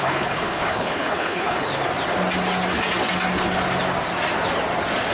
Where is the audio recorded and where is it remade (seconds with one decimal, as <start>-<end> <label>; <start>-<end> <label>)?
0.0-1.7 remade; 1.7-5.1 recorded